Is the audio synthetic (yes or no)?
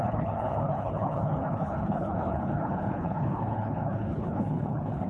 yes